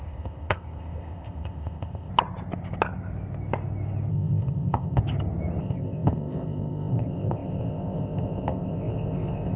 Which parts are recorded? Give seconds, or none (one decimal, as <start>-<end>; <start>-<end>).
2.1-4.1; 5.0-5.6